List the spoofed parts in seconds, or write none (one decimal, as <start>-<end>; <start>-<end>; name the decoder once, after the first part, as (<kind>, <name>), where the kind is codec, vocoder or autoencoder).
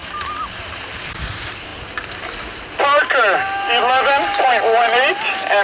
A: none